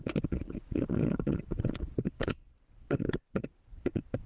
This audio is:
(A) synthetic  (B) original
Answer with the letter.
A